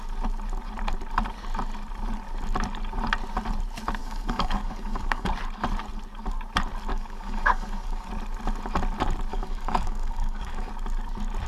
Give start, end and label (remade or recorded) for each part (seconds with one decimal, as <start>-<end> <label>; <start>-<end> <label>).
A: 0.0-4.0 recorded; 4.0-5.3 remade; 5.3-6.9 recorded; 6.9-8.1 remade; 8.1-9.3 recorded; 9.3-10.7 remade; 10.7-11.5 recorded